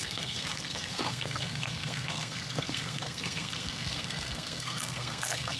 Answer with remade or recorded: remade